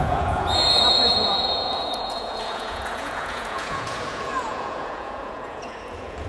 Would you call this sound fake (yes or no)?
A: yes